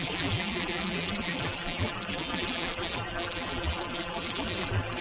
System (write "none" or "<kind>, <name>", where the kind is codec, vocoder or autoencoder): vocoder, BigVGAN v2